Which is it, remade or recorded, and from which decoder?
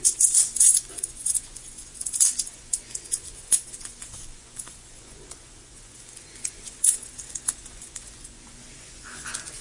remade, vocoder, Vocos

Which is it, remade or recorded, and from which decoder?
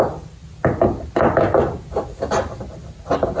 recorded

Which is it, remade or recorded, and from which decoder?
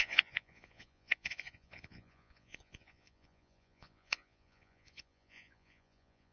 remade, vocoder, Vocos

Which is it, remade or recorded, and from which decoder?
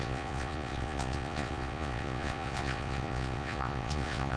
remade, vocoder, Vocos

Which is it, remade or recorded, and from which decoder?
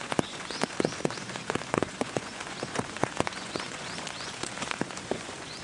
remade, vocoder, Vocos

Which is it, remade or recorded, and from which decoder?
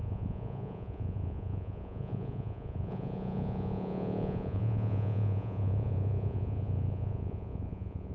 remade, vocoder, Vocos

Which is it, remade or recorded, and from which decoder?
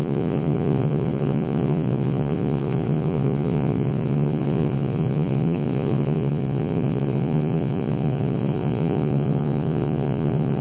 remade, vocoder, Vocos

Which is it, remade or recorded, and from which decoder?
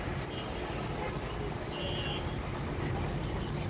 recorded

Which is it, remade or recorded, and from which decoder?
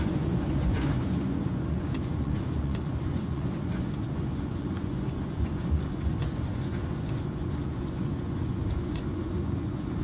remade, vocoder, Vocos